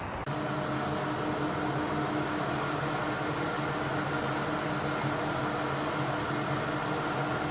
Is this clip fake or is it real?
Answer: real